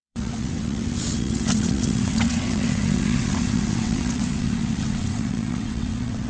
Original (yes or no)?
no